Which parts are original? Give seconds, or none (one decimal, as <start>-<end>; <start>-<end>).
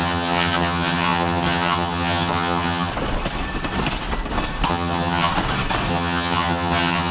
2.9-4.7; 5.3-5.9